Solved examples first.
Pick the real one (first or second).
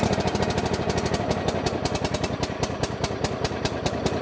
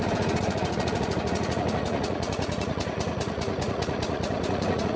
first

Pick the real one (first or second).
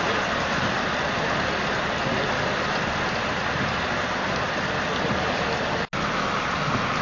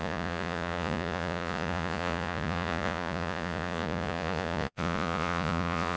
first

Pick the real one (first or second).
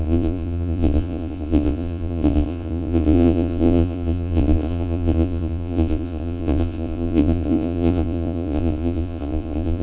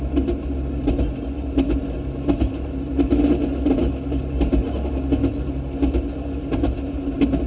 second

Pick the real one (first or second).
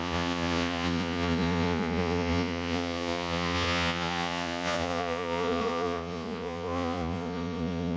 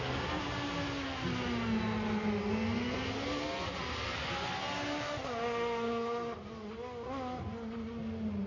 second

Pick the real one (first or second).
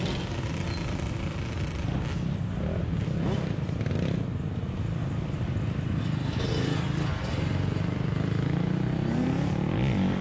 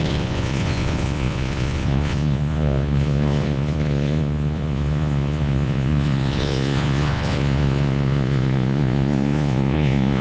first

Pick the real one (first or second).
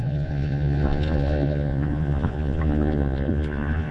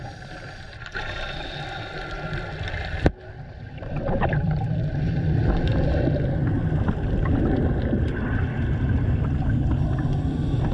second